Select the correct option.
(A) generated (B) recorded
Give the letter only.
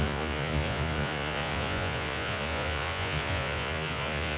A